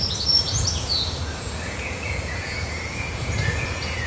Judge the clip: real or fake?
fake